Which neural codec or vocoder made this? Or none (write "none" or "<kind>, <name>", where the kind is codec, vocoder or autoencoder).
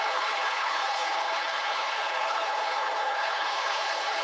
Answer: codec, HILCodec